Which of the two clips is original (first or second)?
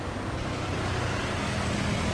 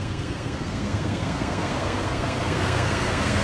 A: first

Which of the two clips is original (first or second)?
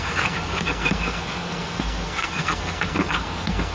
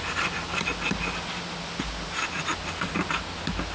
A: second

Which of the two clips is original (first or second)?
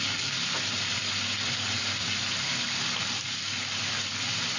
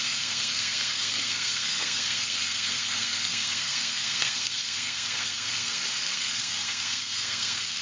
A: first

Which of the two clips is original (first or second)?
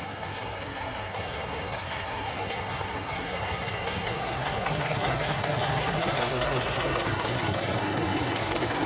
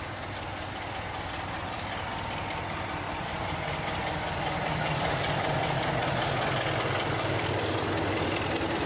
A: second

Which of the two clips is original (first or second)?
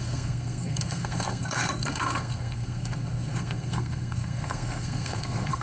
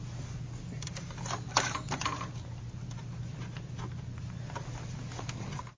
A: second